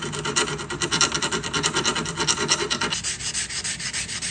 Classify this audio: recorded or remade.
recorded